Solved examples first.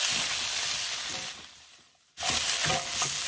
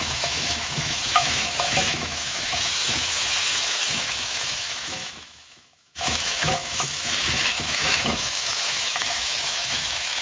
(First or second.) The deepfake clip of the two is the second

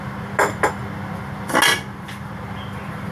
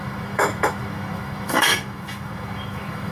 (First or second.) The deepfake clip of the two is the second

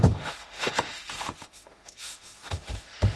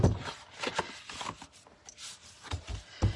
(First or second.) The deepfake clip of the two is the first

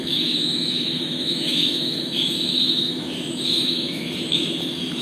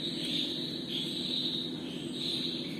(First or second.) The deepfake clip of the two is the first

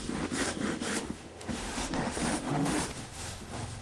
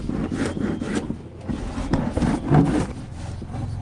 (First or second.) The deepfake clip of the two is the first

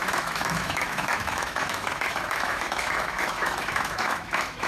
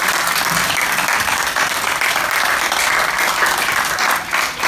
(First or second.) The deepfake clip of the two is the first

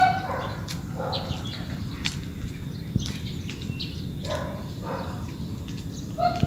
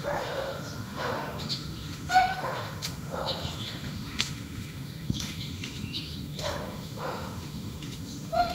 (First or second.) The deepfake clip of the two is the second